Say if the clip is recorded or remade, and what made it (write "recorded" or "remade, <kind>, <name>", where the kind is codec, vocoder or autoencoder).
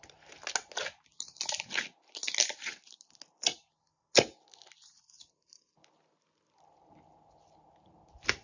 recorded